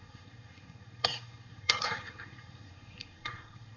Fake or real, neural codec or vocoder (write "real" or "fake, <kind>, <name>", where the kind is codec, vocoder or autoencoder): fake, codec, SNAC